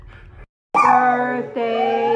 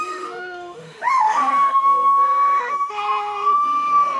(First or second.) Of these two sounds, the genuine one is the first